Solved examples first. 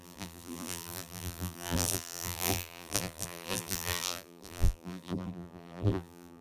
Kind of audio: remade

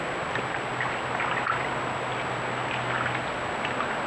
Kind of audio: recorded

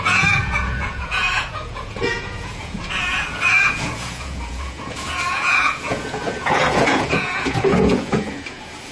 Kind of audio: remade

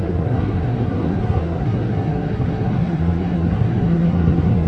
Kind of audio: remade